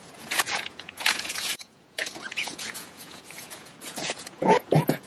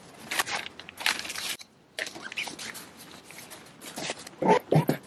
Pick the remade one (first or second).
first